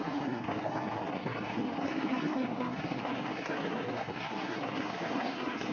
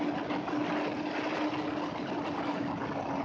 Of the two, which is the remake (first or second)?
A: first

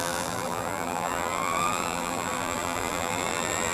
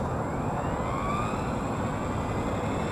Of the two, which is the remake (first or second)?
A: first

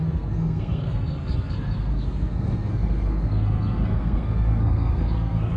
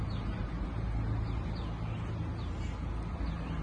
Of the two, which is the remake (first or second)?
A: first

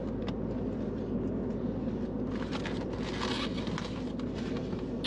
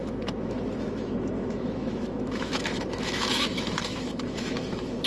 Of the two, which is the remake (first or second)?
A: second